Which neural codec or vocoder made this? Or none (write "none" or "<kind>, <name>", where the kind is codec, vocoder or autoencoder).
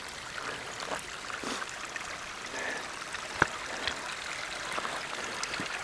none